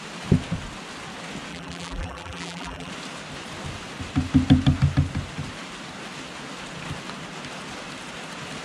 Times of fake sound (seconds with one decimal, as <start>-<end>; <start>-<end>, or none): 1.5-2.9